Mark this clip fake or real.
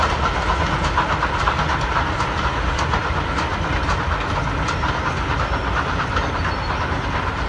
real